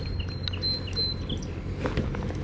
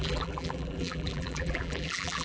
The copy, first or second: second